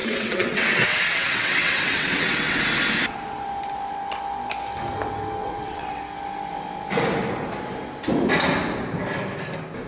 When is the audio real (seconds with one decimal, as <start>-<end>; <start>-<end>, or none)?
2.6-5.4; 6.0-9.9